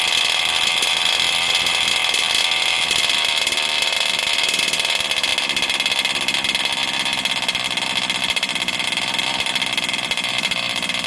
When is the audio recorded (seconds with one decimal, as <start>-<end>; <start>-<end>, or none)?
5.3-8.2